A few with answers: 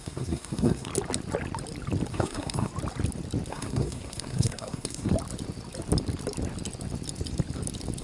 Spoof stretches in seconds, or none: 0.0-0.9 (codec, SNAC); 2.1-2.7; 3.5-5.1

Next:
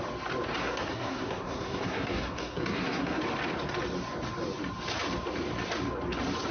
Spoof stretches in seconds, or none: 0.6-3.2 (codec, SNAC)

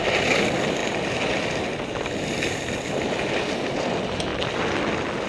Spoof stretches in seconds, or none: none

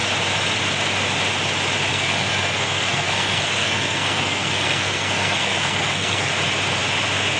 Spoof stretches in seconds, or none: 1.9-6.3 (codec, SNAC)

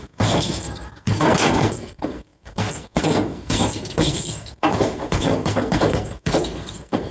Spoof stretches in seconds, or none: 0.0-7.1 (codec, SNAC)

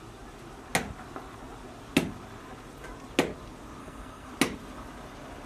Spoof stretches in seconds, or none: 3.8-4.3 (codec, SNAC)

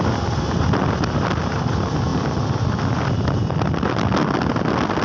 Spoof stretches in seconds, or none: none